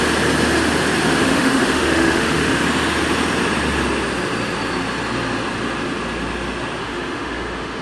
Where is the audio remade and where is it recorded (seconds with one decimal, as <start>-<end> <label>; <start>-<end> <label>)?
0.0-1.2 recorded; 1.2-2.6 remade; 2.6-6.8 recorded; 6.8-7.8 remade